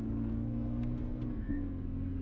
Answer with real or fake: fake